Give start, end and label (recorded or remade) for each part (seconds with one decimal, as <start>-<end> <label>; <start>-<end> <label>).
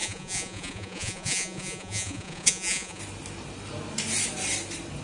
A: 0.0-3.0 remade; 3.0-5.0 recorded